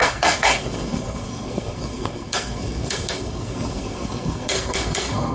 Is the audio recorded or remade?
remade